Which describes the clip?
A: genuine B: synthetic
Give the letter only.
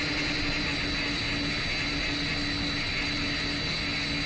A